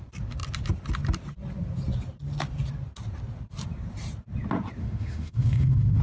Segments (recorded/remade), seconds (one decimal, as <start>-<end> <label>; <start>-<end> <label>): 0.0-4.8 recorded; 4.8-6.0 remade